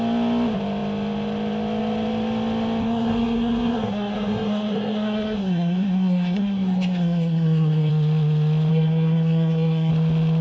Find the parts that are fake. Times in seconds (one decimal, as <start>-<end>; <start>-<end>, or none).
2.8-7.9; 8.7-9.9